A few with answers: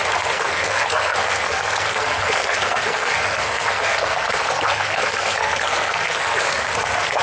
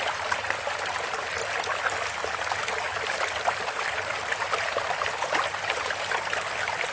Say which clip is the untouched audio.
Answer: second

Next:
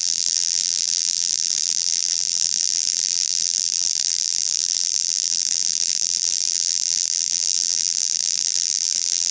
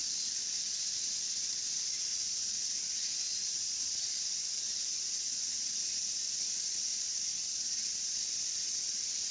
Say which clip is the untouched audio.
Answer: second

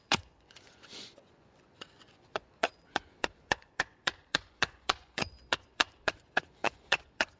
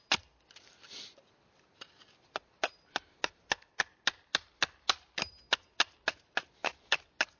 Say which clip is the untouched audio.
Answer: second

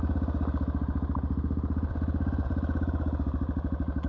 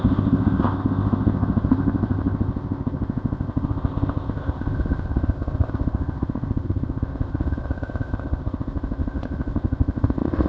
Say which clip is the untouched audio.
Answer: first